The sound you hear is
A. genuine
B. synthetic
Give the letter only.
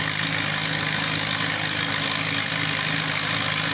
A